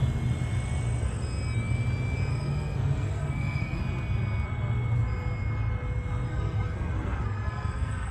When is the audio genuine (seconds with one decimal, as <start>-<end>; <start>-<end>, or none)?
0.0-2.3; 3.8-6.3